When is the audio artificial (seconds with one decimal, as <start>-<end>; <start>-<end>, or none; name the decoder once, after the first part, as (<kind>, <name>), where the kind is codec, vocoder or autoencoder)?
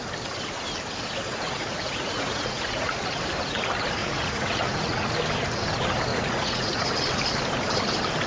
1.3-3.0 (vocoder, Vocos); 4.0-5.1; 6.1-6.9